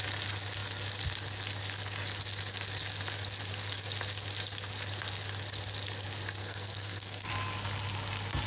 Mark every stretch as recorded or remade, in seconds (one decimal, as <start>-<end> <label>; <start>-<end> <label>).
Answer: 0.0-6.4 recorded; 6.4-7.3 remade; 7.3-8.5 recorded